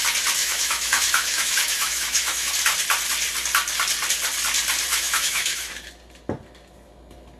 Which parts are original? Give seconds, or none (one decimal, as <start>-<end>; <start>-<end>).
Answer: 0.0-0.4; 2.5-4.9; 5.7-7.4